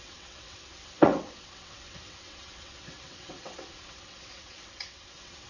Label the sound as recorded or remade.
remade